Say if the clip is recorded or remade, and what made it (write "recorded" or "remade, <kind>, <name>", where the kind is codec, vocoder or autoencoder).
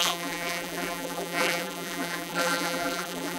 remade, vocoder, BigVGAN v2